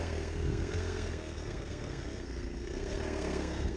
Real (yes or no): no